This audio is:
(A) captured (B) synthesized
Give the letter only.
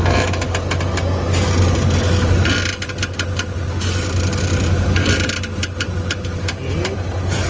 A